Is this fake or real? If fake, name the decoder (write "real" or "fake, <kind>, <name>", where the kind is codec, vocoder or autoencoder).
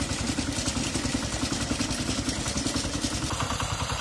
fake, vocoder, BigVGAN v2